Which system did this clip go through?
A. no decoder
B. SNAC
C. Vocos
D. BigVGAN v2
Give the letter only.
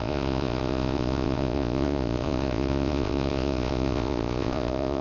C